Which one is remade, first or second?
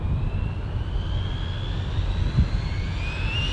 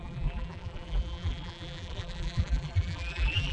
second